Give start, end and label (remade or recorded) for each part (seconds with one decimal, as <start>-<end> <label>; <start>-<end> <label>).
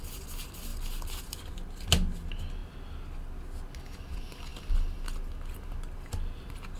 0.0-6.8 recorded